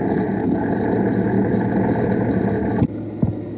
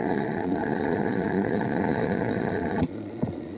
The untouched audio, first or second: first